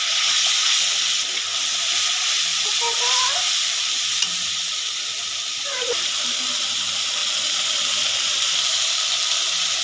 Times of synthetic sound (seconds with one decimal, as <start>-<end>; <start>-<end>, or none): 2.5-4.6; 5.5-6.3